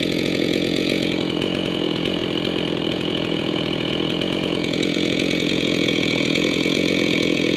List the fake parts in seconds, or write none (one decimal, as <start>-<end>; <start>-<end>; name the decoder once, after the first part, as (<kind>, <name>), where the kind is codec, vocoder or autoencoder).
0.0-2.2 (vocoder, Vocos); 2.9-7.6